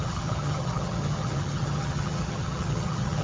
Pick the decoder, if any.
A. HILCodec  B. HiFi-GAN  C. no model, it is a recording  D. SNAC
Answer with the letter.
B